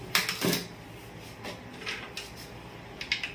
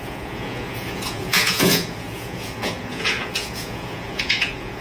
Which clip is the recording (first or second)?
first